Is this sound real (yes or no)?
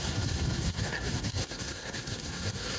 no